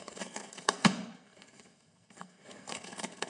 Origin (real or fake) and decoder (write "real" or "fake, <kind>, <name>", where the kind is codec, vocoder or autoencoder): fake, codec, SNAC